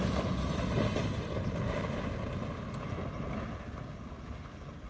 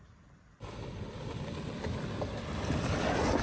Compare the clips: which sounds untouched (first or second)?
second